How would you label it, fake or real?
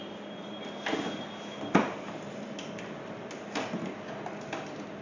real